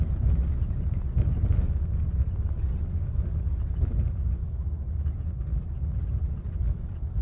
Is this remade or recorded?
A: recorded